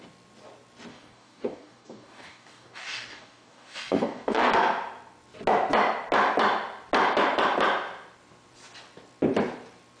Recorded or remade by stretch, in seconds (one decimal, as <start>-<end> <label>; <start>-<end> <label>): 0.0-0.9 recorded; 0.9-4.5 remade; 4.5-10.0 recorded